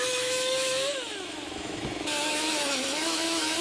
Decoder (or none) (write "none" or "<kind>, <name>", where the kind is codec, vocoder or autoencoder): autoencoder, DAC-VAE